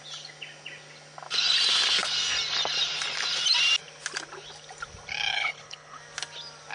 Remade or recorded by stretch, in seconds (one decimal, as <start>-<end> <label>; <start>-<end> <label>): 0.0-5.3 recorded; 5.3-6.0 remade; 6.0-6.7 recorded